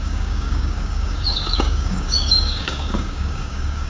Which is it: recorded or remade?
remade